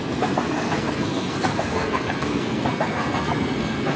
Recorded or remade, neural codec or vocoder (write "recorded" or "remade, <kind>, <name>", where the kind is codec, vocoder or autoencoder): remade, codec, SNAC